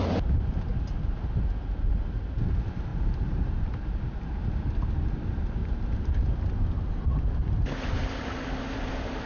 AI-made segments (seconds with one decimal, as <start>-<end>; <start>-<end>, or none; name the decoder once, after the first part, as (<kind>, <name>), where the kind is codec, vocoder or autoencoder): 2.9-4.4 (vocoder, BigVGAN v2); 5.6-6.3

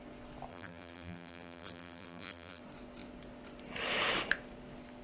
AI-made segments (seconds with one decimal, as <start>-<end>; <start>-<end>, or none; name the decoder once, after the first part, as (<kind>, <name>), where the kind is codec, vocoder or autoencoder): 0.5-2.6 (vocoder, BigVGAN v2)

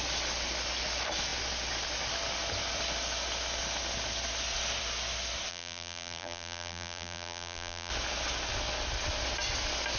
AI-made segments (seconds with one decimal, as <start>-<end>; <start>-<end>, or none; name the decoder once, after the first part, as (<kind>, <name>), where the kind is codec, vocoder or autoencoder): 5.5-7.9 (vocoder, BigVGAN v2)

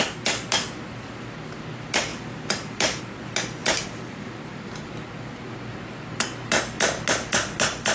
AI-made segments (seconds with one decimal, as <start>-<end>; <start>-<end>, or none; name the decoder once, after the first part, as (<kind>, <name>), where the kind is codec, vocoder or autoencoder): 2.1-3.0 (vocoder, BigVGAN v2); 3.6-4.9